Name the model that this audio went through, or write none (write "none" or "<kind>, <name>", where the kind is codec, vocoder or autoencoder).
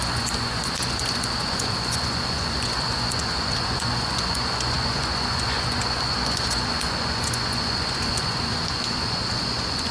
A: vocoder, Vocos